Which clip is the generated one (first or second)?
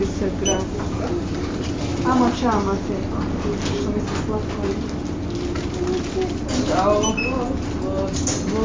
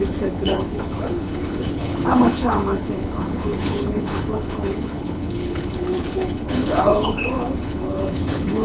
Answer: second